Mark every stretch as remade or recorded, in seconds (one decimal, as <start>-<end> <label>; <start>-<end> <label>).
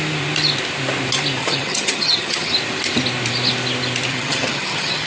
0.0-1.4 recorded; 1.4-2.5 remade; 2.5-4.1 recorded; 4.1-5.1 remade